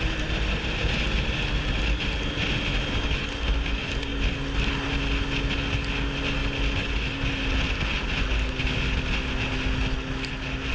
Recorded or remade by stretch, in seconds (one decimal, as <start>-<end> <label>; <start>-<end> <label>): 0.0-10.7 recorded